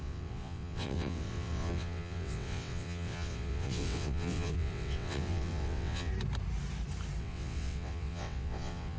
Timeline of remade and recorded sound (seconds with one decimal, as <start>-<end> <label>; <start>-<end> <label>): 0.0-6.1 remade; 6.1-7.2 recorded; 7.2-9.0 remade